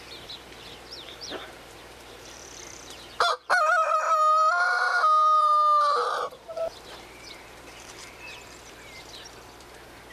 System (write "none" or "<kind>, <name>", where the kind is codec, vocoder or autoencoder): vocoder, BigVGAN v2